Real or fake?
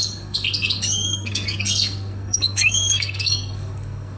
fake